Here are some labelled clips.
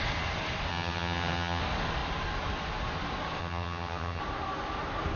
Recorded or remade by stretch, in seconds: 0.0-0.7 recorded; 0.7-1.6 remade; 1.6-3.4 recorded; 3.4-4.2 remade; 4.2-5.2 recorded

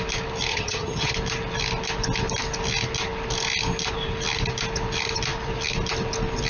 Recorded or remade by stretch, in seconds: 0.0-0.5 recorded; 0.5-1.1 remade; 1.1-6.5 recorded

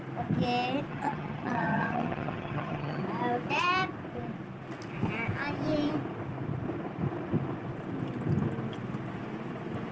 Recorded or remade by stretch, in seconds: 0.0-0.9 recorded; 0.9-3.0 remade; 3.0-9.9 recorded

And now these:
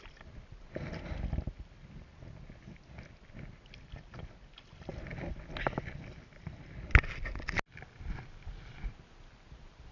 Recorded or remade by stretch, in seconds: 0.0-9.9 recorded

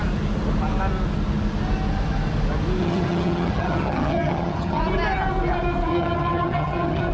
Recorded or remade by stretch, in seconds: 0.0-2.8 recorded; 2.8-4.8 remade; 4.8-5.9 recorded; 5.9-7.1 remade

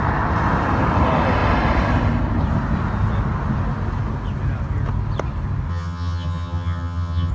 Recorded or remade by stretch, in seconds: 0.0-5.7 recorded; 5.7-7.3 remade

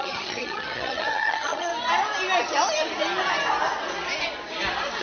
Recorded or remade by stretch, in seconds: 0.0-1.7 remade; 1.7-5.0 recorded